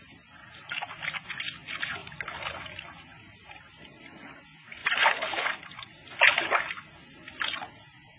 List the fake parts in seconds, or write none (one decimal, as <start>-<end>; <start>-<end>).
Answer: none